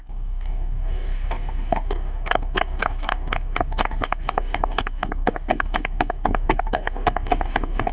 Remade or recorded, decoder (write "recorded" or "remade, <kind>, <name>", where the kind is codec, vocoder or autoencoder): remade, codec, DAC